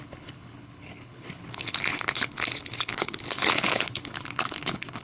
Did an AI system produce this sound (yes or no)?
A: yes